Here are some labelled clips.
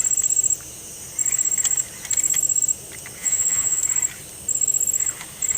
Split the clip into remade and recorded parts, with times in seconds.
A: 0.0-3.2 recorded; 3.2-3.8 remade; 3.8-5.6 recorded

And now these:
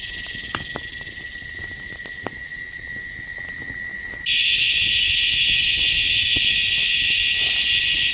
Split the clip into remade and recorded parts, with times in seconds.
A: 0.0-8.1 recorded

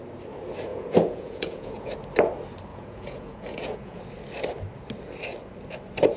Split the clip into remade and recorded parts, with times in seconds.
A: 0.0-0.7 recorded; 0.7-1.9 remade; 1.9-2.7 recorded; 2.7-4.0 remade; 4.0-6.2 recorded

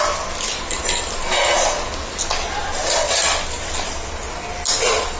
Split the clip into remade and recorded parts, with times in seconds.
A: 0.0-5.2 recorded

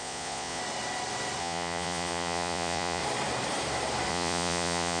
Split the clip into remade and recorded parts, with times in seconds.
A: 0.0-0.6 remade; 0.6-1.4 recorded; 1.4-3.0 remade; 3.0-4.1 recorded; 4.1-5.0 remade

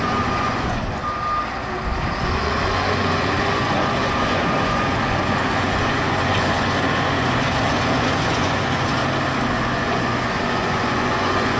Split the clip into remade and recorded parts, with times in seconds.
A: 0.0-1.0 remade; 1.0-2.2 recorded; 2.2-9.0 remade; 9.0-9.5 recorded; 9.5-11.6 remade

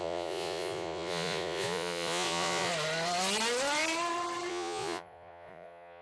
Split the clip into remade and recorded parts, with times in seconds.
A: 0.0-2.7 remade; 2.7-4.5 recorded; 4.5-6.0 remade